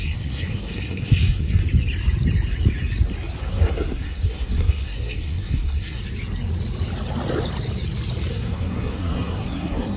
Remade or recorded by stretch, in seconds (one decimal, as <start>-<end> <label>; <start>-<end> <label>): 0.0-1.6 remade; 1.6-3.4 recorded; 3.4-6.0 remade; 6.0-8.3 recorded; 8.3-10.0 remade